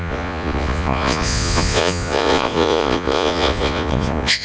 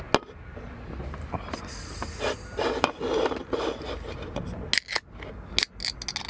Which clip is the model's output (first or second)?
first